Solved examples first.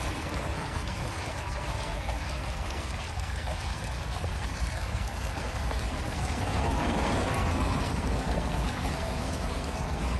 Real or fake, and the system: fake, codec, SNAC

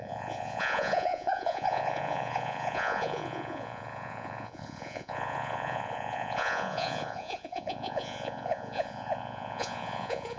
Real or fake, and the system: fake, vocoder, Vocos